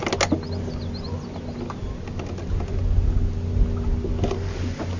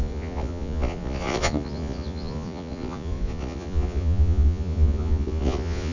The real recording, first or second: first